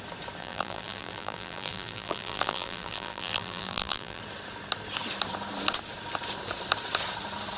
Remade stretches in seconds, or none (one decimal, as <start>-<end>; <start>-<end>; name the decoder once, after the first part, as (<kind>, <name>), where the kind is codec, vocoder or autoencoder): 0.4-4.2 (vocoder, BigVGAN v2)